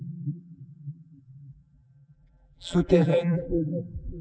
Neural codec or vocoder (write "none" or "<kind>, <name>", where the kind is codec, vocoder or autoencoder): vocoder, BigVGAN v2